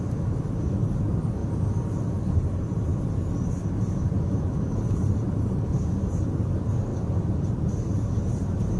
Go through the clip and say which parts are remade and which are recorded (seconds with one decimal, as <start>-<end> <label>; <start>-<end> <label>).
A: 0.0-1.4 remade; 1.4-2.0 recorded; 2.0-2.9 remade; 2.9-3.7 recorded; 3.7-8.8 remade